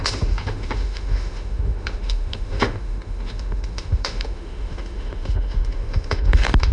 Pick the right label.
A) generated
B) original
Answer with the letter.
A